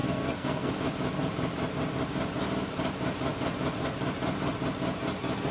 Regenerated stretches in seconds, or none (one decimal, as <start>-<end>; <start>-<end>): 0.0-0.7